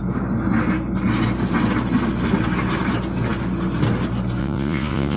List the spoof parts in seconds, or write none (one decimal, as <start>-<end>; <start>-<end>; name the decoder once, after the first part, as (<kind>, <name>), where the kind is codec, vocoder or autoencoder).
4.4-5.2 (vocoder, Vocos)